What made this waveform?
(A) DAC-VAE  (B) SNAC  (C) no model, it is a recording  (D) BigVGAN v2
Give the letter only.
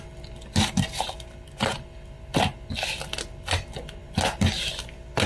C